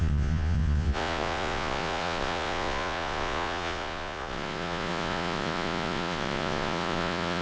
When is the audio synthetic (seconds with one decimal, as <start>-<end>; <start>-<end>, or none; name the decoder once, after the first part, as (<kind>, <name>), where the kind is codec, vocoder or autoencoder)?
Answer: 0.0-7.4 (vocoder, Vocos)

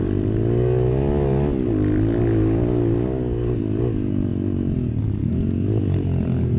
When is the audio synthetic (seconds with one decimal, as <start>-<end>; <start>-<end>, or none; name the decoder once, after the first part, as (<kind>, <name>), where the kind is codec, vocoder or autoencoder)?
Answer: none

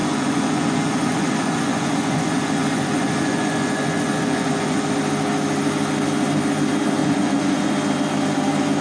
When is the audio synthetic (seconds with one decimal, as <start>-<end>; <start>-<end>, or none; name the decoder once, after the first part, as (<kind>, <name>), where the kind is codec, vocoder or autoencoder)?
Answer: 0.0-4.9 (vocoder, Vocos); 7.0-7.7